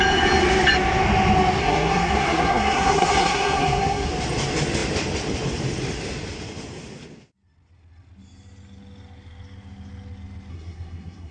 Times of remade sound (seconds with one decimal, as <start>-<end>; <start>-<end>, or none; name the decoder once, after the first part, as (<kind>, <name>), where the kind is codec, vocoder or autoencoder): 1.6-4.1 (codec, SNAC); 10.5-11.3